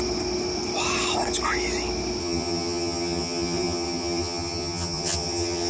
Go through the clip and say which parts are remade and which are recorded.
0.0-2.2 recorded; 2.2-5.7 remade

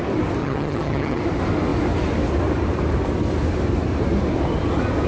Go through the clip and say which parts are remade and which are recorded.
0.0-0.4 recorded; 0.4-1.2 remade; 1.2-5.1 recorded